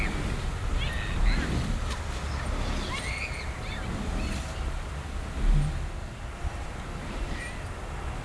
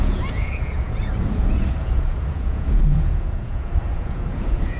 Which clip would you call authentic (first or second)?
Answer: first